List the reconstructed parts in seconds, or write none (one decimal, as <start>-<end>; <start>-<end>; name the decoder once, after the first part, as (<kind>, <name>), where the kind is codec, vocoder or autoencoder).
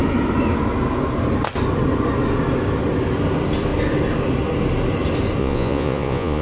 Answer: 5.4-6.4 (vocoder, Vocos)